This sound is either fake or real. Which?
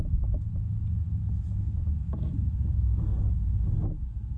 real